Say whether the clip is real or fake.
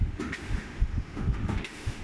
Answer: fake